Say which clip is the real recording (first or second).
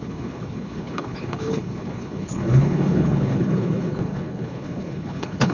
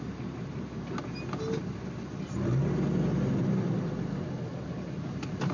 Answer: second